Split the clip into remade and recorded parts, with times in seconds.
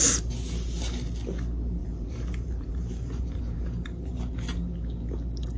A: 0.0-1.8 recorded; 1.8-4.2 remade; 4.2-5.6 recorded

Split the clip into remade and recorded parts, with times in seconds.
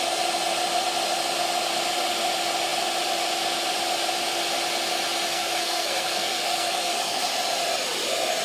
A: 0.0-5.3 recorded; 5.3-7.3 remade; 7.3-8.4 recorded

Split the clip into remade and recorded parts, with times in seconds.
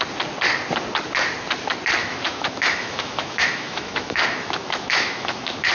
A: 0.0-2.0 recorded; 2.0-5.7 remade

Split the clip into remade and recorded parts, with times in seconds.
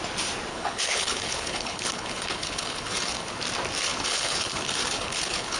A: 0.0-0.5 recorded; 0.5-3.4 remade; 3.4-3.9 recorded; 3.9-5.6 remade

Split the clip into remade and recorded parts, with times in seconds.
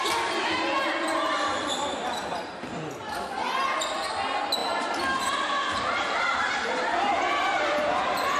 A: 0.0-2.4 recorded; 2.4-2.9 remade; 2.9-4.6 recorded; 4.6-8.4 remade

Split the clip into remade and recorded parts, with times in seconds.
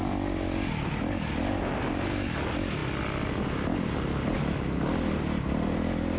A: 0.0-6.2 recorded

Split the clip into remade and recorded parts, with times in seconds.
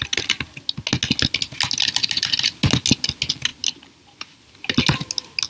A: 0.0-5.5 recorded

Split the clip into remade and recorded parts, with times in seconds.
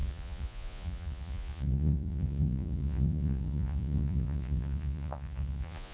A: 0.0-5.9 remade